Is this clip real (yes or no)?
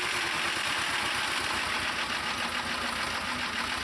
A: yes